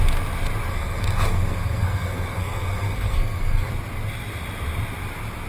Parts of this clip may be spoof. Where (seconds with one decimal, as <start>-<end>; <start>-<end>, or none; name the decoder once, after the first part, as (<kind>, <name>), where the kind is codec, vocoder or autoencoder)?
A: 0.7-3.7 (codec, SNAC)